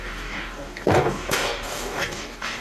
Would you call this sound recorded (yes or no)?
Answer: no